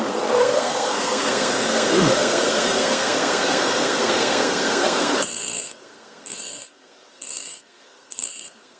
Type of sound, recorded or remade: remade